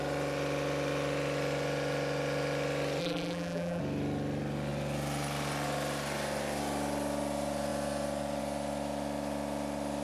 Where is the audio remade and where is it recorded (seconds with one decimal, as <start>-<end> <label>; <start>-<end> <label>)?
0.0-3.0 recorded; 3.0-3.8 remade; 3.8-10.0 recorded